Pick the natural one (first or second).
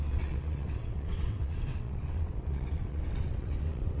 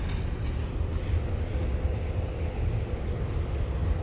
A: second